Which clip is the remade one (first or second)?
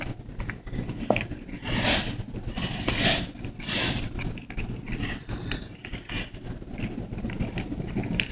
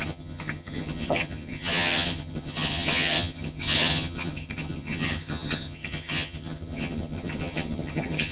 second